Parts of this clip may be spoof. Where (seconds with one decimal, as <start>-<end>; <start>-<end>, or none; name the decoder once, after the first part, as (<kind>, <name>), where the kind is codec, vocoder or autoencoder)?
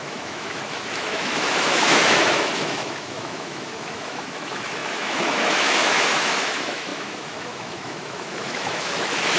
0.0-9.4 (autoencoder, DAC-VAE)